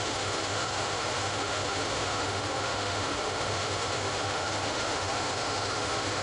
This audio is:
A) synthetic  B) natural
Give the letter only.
A